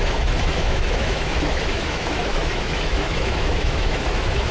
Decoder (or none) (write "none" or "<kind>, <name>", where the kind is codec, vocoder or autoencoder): autoencoder, DAC-VAE